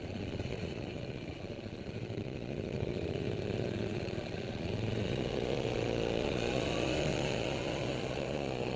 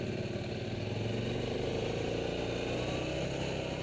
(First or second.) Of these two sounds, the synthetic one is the first